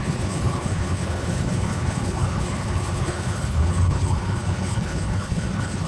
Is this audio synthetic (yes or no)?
yes